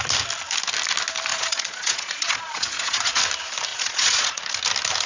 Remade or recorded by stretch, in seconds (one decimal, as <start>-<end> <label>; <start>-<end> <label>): 0.0-1.3 recorded; 1.3-3.2 remade; 3.2-3.7 recorded; 3.7-4.4 remade; 4.4-5.1 recorded